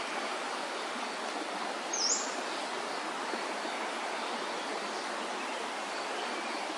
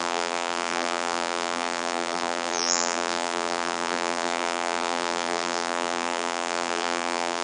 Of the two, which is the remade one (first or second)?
second